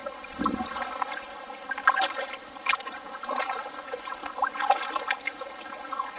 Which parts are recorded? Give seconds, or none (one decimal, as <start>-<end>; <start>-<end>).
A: 0.0-3.4; 4.2-5.3